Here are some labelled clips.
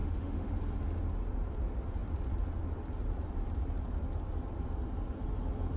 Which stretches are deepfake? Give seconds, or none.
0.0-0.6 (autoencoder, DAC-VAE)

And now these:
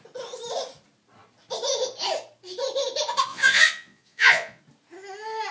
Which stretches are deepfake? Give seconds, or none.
3.3-4.6 (vocoder, Vocos)

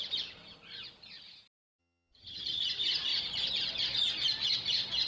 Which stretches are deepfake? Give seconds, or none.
1.8-2.6 (vocoder, HiFi-GAN)